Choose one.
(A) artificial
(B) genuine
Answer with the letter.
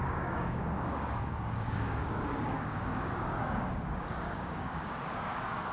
A